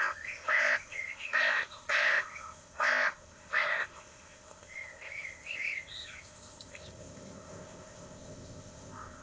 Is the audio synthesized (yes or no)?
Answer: yes